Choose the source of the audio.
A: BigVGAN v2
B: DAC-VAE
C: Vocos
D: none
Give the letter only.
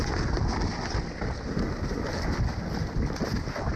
D